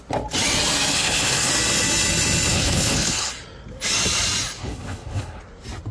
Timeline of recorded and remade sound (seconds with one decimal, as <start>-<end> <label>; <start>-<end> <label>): 0.0-0.9 recorded; 0.9-1.5 remade; 1.5-2.5 recorded; 2.5-3.3 remade; 3.3-4.6 recorded; 4.6-5.4 remade; 5.4-5.9 recorded